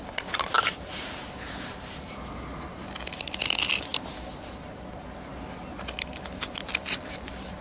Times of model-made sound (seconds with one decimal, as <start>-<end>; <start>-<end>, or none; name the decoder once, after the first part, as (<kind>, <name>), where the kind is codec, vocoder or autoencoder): none